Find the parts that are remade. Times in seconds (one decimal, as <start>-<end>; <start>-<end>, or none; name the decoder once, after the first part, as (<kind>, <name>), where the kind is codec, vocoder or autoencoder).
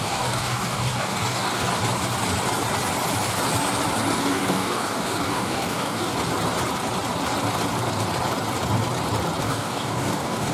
0.0-1.7 (codec, DAC); 4.2-6.1; 9.4-10.5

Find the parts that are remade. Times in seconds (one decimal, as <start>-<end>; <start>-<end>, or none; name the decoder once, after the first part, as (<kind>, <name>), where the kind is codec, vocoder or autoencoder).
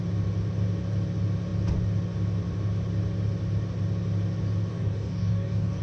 4.7-5.8 (codec, DAC)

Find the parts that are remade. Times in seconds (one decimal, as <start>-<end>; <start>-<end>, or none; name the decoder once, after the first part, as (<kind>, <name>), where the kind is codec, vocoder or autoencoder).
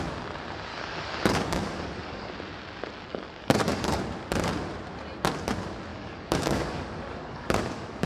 0.7-2.3 (codec, DAC); 3.1-4.0; 5.9-8.1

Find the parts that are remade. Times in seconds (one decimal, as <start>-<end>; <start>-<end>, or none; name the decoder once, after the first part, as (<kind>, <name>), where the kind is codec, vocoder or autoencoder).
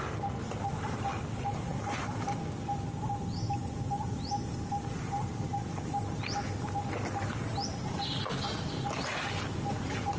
none